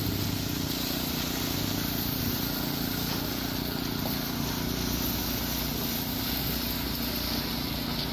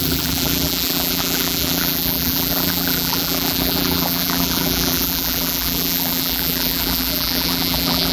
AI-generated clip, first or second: second